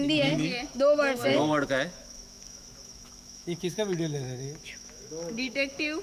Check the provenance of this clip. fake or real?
fake